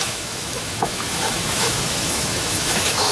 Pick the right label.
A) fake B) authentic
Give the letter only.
A